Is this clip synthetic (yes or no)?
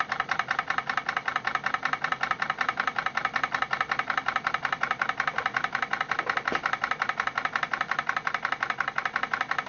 no